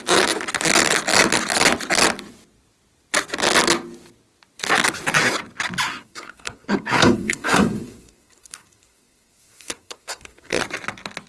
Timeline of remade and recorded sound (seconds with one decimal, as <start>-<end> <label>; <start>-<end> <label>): 0.0-5.9 recorded; 5.9-10.6 remade; 10.6-11.3 recorded